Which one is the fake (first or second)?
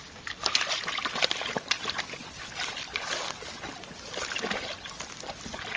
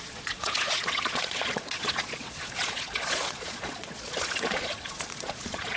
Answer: second